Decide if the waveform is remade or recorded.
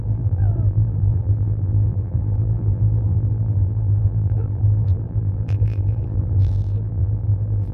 remade